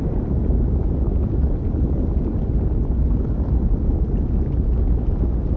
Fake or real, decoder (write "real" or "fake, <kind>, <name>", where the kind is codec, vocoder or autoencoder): real